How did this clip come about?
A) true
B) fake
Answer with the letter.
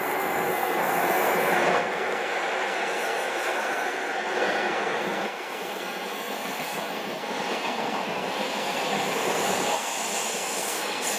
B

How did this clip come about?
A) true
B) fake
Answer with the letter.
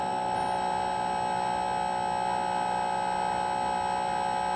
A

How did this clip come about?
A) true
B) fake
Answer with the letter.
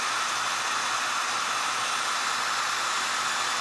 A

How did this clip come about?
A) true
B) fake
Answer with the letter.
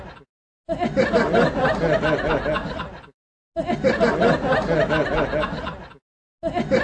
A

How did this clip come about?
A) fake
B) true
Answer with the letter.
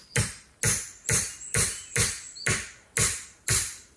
B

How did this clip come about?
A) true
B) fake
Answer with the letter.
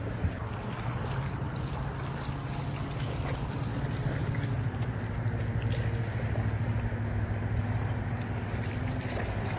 A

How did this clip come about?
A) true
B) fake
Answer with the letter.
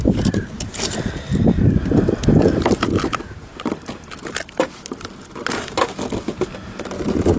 A